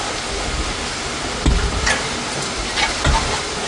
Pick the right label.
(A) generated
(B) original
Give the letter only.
B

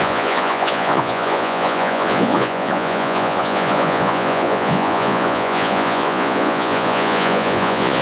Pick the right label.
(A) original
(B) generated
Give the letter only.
B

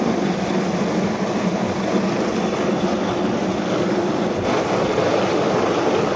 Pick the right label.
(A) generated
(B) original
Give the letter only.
B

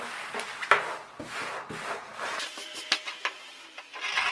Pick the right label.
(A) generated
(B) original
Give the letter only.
B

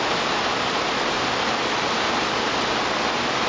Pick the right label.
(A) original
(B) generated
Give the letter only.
A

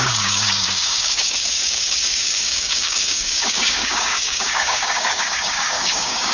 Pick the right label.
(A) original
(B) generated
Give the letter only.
B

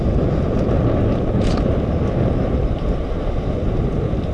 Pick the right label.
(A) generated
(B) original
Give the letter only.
B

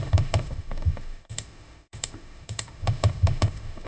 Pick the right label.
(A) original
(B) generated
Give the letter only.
B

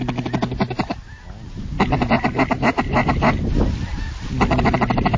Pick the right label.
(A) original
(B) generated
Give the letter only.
A